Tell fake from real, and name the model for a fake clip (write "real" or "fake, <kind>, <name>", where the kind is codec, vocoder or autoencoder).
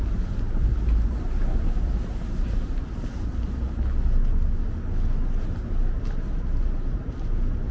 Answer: real